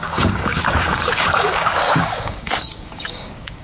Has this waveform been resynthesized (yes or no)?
yes